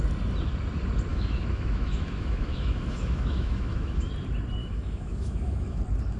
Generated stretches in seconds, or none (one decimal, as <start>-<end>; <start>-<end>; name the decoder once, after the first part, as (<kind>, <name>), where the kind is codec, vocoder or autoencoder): 1.1-4.1 (autoencoder, DAC-VAE); 4.6-5.8